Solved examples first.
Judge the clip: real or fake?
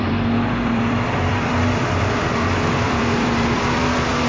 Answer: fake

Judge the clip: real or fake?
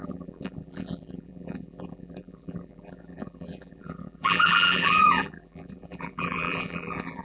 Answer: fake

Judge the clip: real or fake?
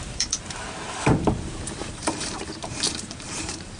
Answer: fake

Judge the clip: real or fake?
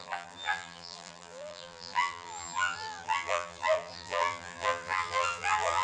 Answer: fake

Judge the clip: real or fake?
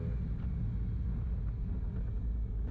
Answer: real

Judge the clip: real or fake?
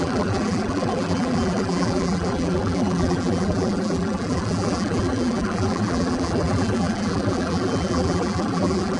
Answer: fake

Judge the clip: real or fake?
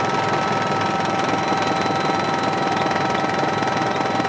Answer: real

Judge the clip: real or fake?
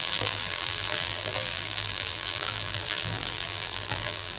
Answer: fake